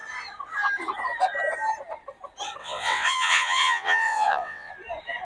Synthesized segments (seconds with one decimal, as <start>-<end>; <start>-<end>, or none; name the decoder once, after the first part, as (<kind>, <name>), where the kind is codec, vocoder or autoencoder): 2.6-4.7 (vocoder, WaveNeXt)